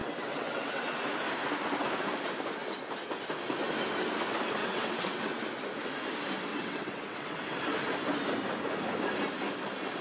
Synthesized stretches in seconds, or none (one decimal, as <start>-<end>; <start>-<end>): 0.0-1.0; 4.6-5.4; 6.5-7.6